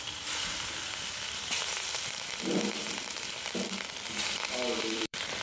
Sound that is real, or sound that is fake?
fake